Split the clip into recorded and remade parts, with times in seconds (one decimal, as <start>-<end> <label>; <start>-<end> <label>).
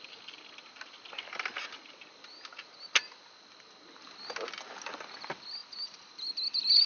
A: 0.0-6.9 recorded